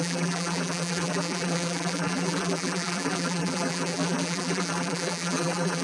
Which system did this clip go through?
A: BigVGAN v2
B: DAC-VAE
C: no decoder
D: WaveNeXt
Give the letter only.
A